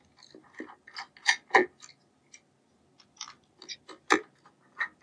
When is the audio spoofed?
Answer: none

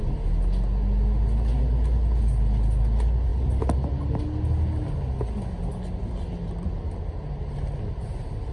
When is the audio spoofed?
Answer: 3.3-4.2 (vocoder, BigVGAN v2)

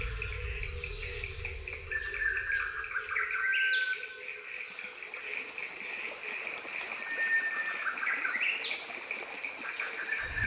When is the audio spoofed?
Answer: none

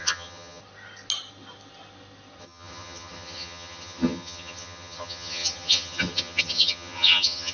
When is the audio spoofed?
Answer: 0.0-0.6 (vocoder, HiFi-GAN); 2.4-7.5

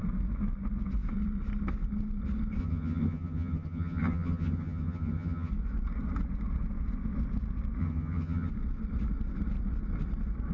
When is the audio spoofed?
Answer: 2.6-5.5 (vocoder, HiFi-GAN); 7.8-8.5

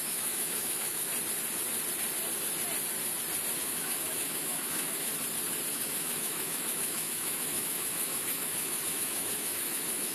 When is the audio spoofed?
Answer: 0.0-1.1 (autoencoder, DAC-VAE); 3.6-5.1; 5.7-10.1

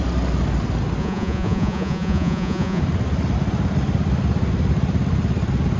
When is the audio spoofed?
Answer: 1.0-2.8 (vocoder, Vocos)

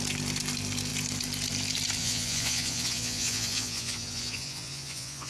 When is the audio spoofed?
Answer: 2.0-5.3 (vocoder, Vocos)